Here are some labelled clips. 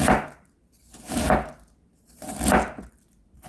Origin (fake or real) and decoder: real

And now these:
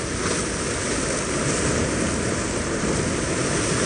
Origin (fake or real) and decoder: real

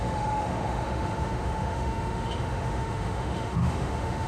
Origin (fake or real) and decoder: fake, autoencoder, DAC-VAE